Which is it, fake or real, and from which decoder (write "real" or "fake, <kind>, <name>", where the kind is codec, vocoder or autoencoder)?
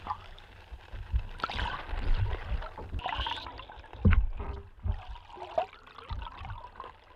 real